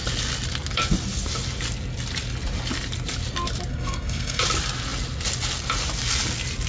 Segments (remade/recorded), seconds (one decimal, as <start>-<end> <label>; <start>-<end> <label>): 0.0-3.7 recorded; 3.7-4.4 remade; 4.4-6.7 recorded